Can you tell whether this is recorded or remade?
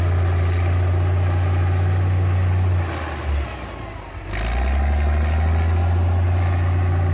recorded